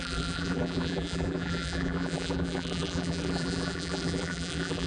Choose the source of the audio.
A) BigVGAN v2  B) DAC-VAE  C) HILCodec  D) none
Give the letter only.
A